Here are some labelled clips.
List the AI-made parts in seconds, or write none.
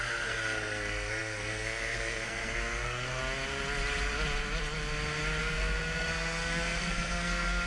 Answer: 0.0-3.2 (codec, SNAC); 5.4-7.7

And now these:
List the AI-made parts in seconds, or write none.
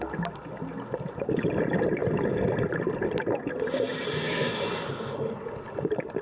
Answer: none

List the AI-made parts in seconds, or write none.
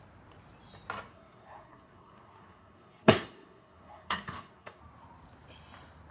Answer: 1.1-4.8 (codec, SNAC)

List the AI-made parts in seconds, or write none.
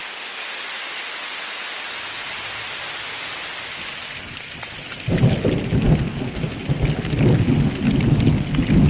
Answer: none